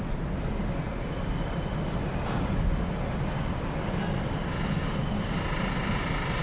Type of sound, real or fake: real